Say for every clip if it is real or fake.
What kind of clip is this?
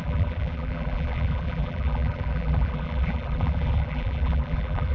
fake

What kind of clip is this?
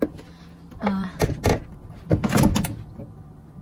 real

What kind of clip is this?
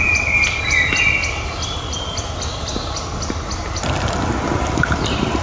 real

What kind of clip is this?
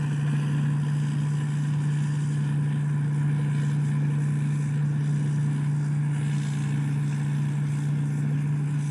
real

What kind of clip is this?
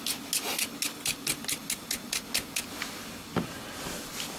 real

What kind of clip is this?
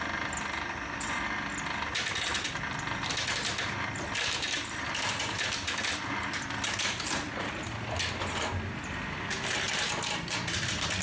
fake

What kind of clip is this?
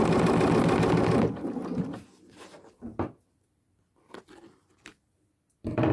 real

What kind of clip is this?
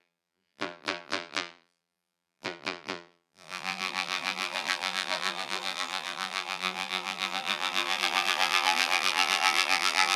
fake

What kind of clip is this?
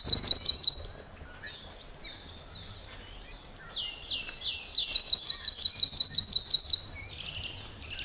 real